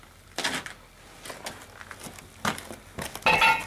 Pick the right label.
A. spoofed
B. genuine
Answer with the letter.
B